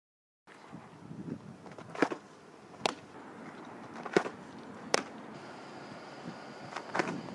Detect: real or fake real